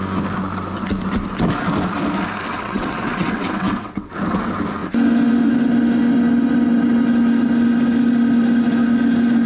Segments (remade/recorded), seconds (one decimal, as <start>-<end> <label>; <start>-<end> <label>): 0.0-2.5 recorded; 2.5-4.1 remade; 4.1-9.5 recorded